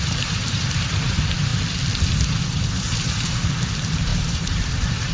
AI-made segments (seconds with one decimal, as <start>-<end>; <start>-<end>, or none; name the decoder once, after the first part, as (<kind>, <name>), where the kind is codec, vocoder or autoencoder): 0.0-1.5 (vocoder, BigVGAN v2); 2.6-5.1